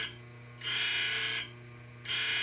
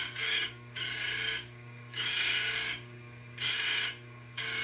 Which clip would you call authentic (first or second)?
first